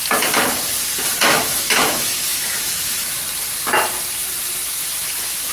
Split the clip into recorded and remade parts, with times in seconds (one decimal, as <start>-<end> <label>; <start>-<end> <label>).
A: 0.0-1.2 recorded; 1.2-3.2 remade; 3.2-4.9 recorded; 4.9-5.5 remade